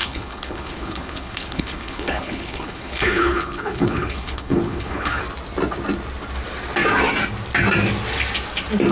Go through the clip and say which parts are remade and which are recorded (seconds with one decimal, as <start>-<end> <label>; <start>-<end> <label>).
0.0-5.2 remade; 5.2-8.9 recorded

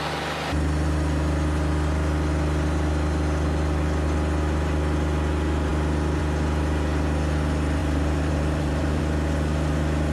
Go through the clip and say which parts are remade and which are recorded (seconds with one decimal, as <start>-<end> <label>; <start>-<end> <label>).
0.0-7.8 recorded; 7.8-9.0 remade; 9.0-10.1 recorded

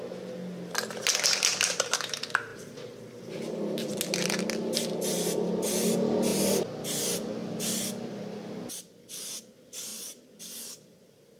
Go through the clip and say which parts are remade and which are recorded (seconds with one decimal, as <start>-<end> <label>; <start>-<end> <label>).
0.0-9.9 recorded; 9.9-10.4 remade; 10.4-11.4 recorded

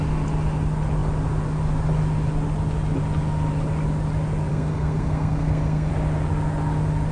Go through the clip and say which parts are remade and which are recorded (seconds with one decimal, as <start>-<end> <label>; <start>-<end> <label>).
0.0-4.5 recorded; 4.5-5.9 remade; 5.9-7.1 recorded

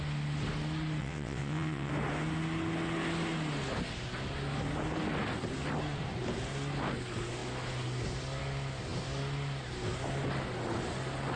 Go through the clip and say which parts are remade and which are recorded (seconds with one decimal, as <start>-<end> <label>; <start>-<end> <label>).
0.0-1.0 recorded; 1.0-1.9 remade; 1.9-11.4 recorded

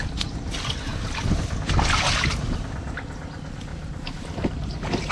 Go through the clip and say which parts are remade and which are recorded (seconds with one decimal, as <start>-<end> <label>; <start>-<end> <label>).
0.0-3.7 recorded; 3.7-5.1 remade

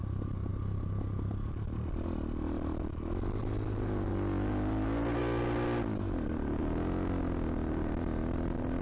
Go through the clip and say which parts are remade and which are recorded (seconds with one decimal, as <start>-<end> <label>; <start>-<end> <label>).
0.0-8.8 recorded

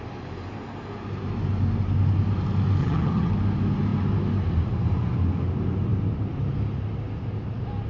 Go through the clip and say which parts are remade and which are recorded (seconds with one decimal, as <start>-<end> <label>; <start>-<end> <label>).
0.0-2.8 recorded; 2.8-3.3 remade; 3.3-7.9 recorded